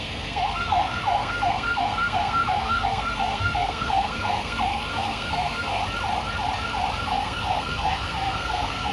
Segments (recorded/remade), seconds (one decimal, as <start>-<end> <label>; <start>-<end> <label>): 0.0-5.8 remade; 5.8-7.0 recorded; 7.0-8.9 remade